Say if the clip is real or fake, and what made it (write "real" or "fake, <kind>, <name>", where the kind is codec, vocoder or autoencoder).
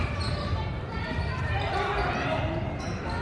real